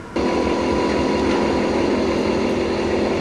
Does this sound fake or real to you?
real